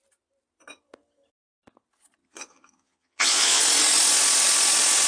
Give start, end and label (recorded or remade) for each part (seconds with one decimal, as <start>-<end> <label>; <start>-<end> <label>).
0.0-2.2 recorded; 2.2-3.6 remade; 3.6-5.1 recorded